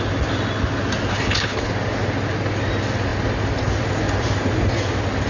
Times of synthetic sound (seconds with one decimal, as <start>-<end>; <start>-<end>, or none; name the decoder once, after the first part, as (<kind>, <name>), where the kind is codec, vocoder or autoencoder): 1.1-1.7 (codec, HILCodec)